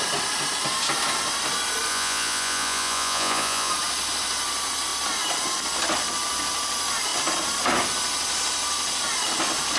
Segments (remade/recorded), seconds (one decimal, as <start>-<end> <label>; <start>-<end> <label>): 0.0-1.9 recorded; 1.9-3.7 remade; 3.7-9.8 recorded

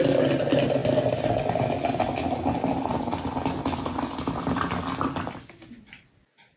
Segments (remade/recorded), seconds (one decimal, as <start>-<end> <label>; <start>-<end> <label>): 0.0-6.6 recorded

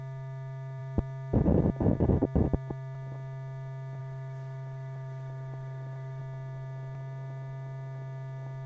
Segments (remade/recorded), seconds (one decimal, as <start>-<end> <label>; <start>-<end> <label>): 0.0-4.0 recorded; 4.0-6.2 remade; 6.2-8.7 recorded